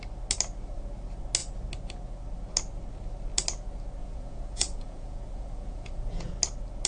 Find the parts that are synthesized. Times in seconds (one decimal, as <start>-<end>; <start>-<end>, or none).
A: 4.0-6.3